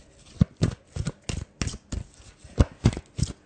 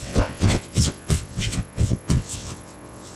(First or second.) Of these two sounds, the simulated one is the second